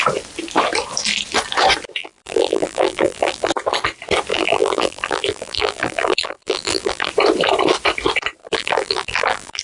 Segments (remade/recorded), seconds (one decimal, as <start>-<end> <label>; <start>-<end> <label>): 0.0-2.0 recorded; 2.0-3.5 remade; 3.5-4.3 recorded; 4.3-7.1 remade; 7.1-8.4 recorded; 8.4-9.6 remade